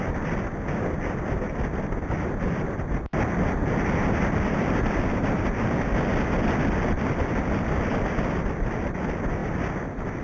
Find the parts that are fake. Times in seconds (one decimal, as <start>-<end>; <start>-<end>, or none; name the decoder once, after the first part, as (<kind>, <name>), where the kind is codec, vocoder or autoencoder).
none